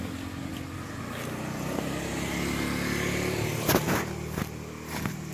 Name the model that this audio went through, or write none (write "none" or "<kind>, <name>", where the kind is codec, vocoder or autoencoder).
none